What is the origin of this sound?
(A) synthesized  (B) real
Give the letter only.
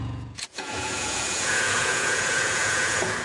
A